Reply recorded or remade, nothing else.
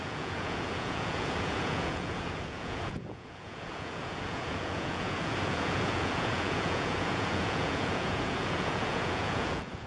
remade